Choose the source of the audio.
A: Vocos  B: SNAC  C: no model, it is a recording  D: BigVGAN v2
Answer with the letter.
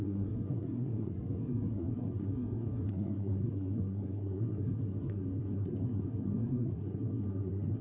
B